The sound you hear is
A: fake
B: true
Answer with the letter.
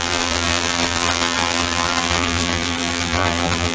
A